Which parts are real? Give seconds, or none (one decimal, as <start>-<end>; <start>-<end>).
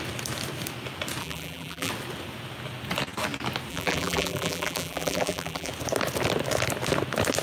0.0-1.2; 1.9-3.7; 5.7-7.4